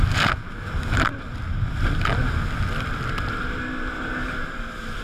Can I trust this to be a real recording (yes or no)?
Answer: yes